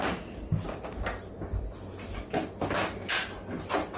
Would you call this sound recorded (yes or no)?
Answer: yes